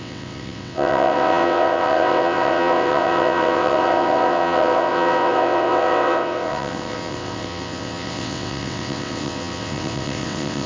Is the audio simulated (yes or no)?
yes